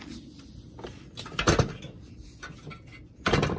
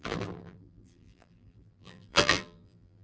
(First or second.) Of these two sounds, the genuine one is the first